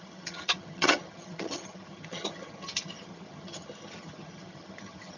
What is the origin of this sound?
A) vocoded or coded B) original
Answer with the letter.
A